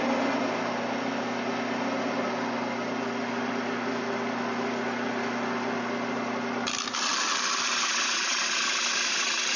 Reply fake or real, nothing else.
real